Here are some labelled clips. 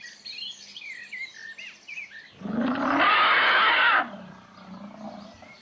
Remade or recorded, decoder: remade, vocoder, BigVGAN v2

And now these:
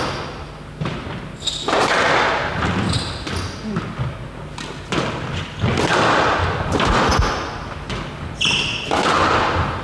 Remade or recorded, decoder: recorded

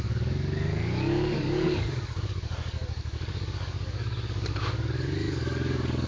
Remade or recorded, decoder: remade, codec, DAC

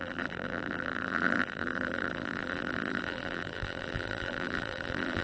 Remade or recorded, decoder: remade, vocoder, BigVGAN v2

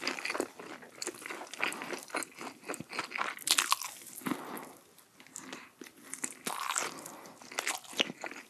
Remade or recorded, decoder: recorded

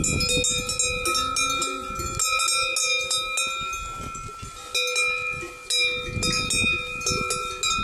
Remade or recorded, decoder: recorded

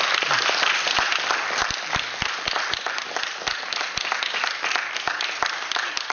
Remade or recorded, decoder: remade, vocoder, BigVGAN v2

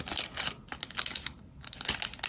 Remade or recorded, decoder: recorded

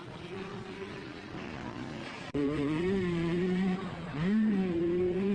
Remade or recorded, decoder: remade, vocoder, Vocos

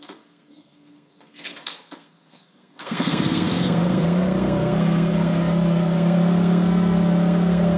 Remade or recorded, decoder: remade, codec, SNAC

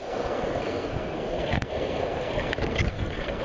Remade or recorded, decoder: remade, codec, SNAC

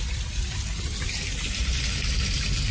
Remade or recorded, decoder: recorded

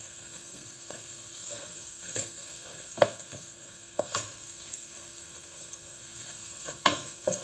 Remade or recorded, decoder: remade, codec, SNAC